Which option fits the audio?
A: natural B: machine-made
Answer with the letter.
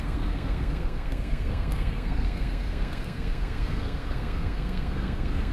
B